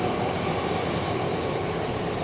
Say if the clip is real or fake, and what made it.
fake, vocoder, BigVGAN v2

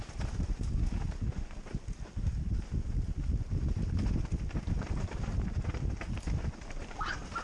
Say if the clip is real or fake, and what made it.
real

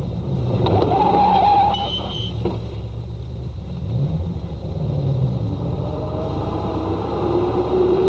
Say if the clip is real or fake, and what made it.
fake, vocoder, BigVGAN v2